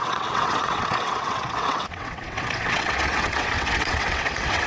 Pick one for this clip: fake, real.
fake